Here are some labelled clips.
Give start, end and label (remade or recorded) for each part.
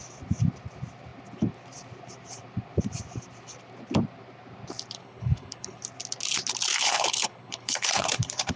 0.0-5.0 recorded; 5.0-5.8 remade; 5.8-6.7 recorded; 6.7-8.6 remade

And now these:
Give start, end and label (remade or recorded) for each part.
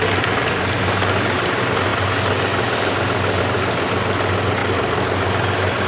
0.0-5.9 recorded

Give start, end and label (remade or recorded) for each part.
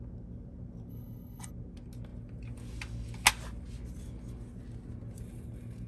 0.0-0.9 recorded; 0.9-1.5 remade; 1.5-5.9 recorded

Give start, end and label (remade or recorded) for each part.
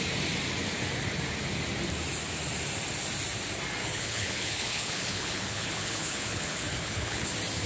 0.0-3.8 recorded; 3.8-7.3 remade; 7.3-7.7 recorded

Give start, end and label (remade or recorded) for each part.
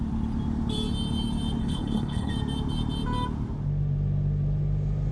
0.0-1.6 recorded; 1.6-2.3 remade; 2.3-5.1 recorded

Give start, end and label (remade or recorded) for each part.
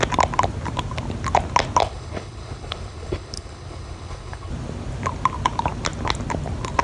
0.0-1.8 recorded; 1.8-4.5 remade; 4.5-6.8 recorded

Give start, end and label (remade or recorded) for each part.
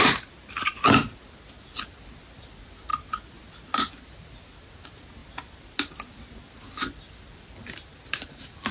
0.0-8.7 recorded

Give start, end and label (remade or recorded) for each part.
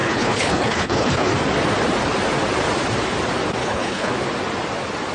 0.0-1.3 remade; 1.3-3.6 recorded; 3.6-4.1 remade; 4.1-5.1 recorded